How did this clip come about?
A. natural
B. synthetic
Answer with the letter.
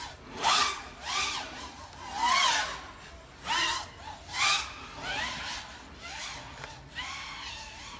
A